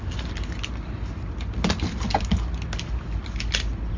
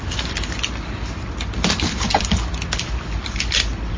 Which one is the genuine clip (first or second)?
first